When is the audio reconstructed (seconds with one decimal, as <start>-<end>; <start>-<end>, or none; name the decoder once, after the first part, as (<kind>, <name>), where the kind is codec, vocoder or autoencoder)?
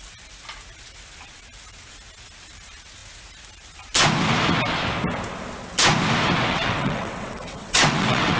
6.5-8.4 (vocoder, WaveNeXt)